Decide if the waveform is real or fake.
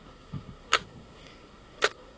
fake